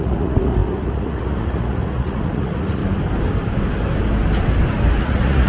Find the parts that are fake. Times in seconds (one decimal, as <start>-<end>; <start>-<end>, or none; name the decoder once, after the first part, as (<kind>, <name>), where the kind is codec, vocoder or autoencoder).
0.0-2.8 (vocoder, Vocos); 5.0-5.5